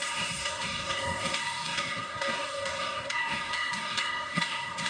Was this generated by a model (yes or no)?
yes